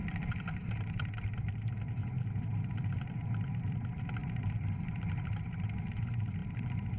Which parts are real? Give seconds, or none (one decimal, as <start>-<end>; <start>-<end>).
0.0-4.2; 5.9-6.4